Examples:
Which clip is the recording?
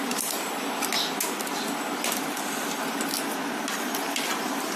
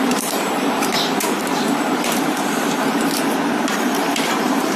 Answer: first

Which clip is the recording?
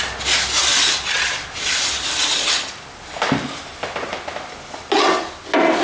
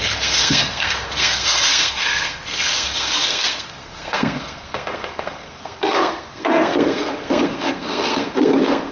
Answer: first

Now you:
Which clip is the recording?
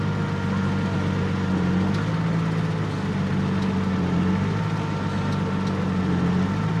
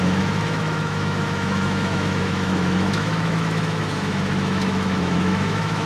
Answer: first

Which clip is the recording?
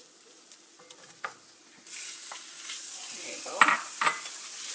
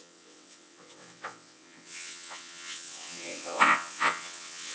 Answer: first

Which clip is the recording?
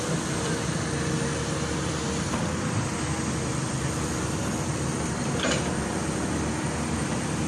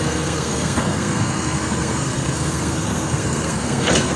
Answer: first